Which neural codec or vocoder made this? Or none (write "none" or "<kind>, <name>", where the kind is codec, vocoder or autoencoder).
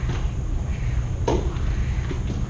none